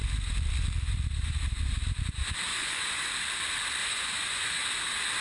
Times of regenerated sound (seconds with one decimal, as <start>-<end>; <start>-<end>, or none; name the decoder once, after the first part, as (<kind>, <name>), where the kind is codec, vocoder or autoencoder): 2.5-3.1 (vocoder, Vocos); 3.8-4.6